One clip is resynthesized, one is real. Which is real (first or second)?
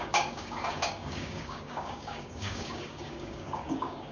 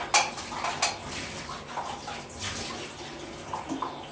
second